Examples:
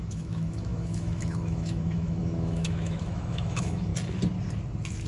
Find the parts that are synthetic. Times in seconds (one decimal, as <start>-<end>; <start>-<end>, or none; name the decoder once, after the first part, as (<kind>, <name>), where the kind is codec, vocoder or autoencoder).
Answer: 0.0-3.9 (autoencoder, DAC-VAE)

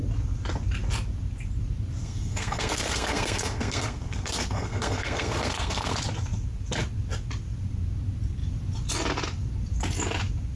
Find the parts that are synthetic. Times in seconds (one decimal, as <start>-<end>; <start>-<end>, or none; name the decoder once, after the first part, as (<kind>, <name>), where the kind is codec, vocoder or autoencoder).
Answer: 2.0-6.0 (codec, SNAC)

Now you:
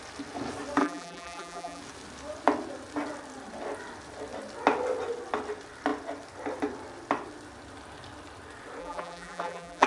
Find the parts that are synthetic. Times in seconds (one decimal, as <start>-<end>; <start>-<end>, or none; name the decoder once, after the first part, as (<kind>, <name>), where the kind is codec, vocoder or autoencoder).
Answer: 0.8-1.8 (vocoder, BigVGAN v2); 8.8-9.9